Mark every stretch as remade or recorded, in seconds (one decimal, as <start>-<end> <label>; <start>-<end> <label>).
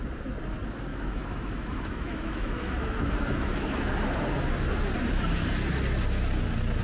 0.0-0.9 recorded; 0.9-3.9 remade; 3.9-6.8 recorded